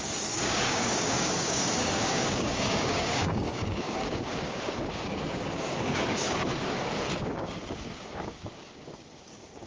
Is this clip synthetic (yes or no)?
yes